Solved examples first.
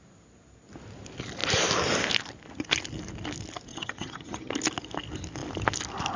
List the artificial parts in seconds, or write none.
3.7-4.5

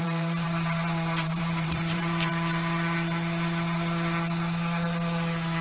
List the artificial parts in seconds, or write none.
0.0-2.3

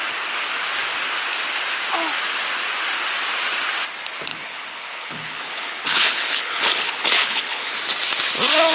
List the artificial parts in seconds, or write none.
4.3-7.7

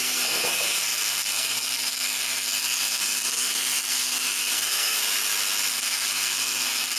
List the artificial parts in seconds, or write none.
0.0-5.0; 5.7-7.0

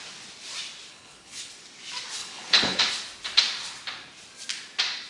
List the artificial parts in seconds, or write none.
0.9-1.5; 2.2-2.8

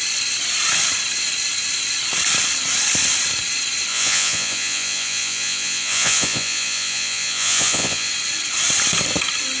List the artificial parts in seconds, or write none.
3.9-8.1

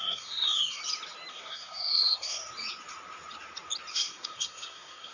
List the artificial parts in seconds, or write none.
0.0-0.8; 1.3-2.4; 3.9-5.1